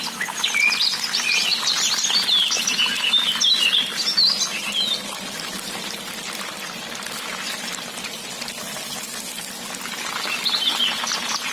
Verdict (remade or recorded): recorded